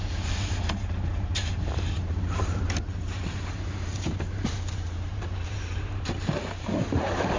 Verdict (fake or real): fake